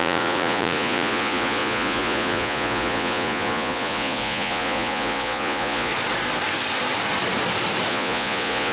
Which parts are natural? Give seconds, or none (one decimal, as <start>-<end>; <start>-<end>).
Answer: 5.9-7.9